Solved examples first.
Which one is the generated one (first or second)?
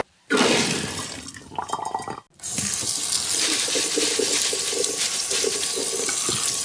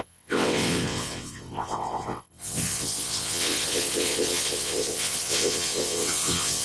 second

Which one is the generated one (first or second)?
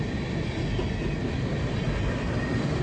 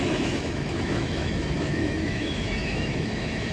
second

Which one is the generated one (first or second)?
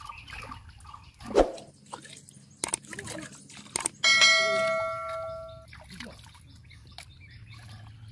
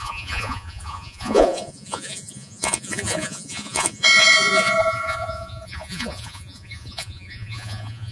second